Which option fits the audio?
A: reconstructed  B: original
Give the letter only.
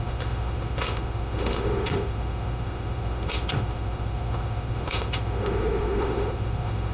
A